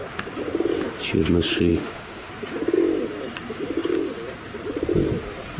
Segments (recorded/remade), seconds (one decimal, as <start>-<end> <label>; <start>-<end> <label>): 0.0-1.7 recorded; 1.7-2.3 remade; 2.3-5.6 recorded

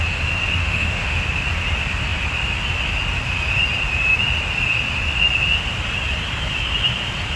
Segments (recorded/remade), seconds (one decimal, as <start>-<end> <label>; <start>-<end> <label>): 0.0-0.6 recorded; 0.6-1.2 remade; 1.2-7.4 recorded

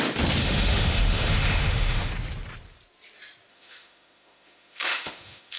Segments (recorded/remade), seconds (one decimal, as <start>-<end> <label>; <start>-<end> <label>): 0.0-0.4 recorded; 0.4-2.1 remade; 2.1-3.5 recorded; 3.5-5.6 remade

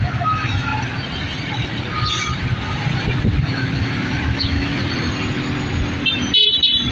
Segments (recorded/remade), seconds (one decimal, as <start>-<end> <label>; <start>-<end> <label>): 0.0-0.7 remade; 0.7-3.4 recorded; 3.4-4.7 remade; 4.7-6.9 recorded

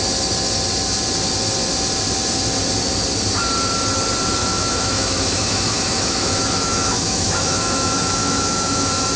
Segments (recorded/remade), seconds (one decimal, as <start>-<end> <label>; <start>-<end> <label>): 0.0-4.4 recorded; 4.4-9.2 remade